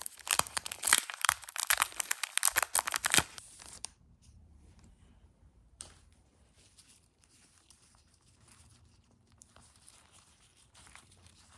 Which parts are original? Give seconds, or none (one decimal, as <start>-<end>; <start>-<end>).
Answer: 1.6-3.6